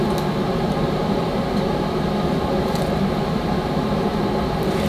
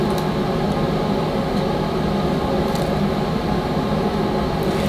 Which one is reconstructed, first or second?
first